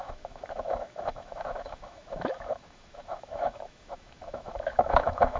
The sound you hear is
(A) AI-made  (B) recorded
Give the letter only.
A